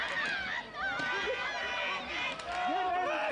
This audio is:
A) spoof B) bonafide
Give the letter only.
B